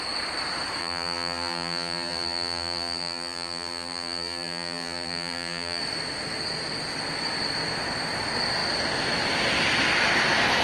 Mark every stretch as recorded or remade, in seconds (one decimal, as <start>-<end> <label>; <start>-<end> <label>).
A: 0.0-0.8 recorded; 0.8-5.8 remade; 5.8-10.6 recorded